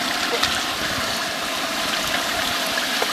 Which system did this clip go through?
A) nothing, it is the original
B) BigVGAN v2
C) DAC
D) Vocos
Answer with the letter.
A